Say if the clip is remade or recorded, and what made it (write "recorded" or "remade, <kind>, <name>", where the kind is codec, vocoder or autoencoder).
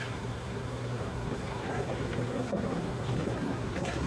remade, codec, SNAC